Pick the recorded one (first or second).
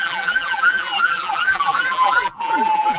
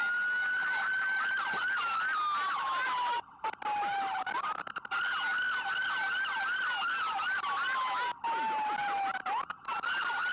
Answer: second